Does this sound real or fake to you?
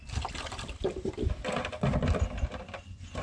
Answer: real